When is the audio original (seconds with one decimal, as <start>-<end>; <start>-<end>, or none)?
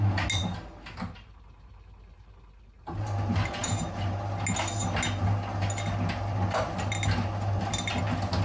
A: 0.0-8.4